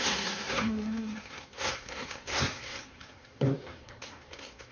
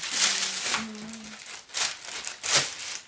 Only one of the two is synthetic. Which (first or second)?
first